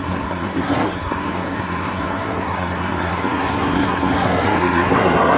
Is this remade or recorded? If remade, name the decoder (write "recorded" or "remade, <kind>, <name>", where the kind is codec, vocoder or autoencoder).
remade, codec, SNAC